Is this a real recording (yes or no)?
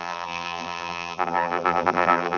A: no